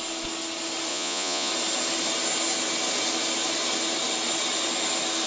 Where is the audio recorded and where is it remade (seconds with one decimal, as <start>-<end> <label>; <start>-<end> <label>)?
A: 0.0-0.9 recorded; 0.9-1.5 remade; 1.5-5.3 recorded